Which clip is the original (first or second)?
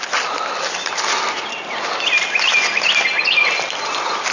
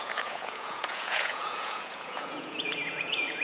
first